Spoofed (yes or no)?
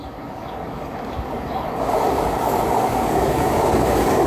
yes